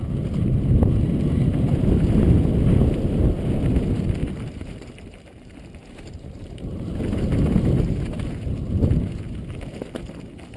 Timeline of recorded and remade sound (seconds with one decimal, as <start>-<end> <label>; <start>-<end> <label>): 0.0-4.2 recorded; 4.2-8.9 remade; 8.9-10.6 recorded